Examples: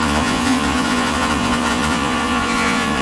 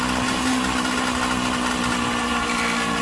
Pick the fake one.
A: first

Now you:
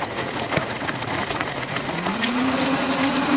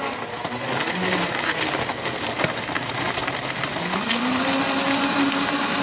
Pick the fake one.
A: first